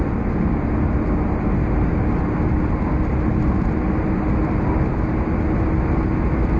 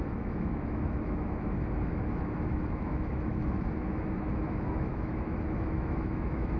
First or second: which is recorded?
first